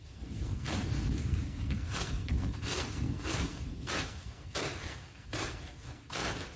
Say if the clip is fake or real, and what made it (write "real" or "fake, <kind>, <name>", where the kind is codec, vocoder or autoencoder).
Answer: fake, codec, SNAC